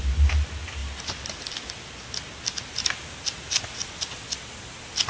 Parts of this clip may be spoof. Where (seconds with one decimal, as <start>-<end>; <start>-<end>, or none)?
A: none